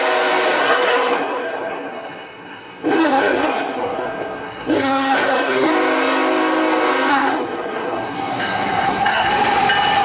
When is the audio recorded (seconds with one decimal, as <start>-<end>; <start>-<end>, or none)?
0.0-0.6; 5.7-7.1; 9.3-10.0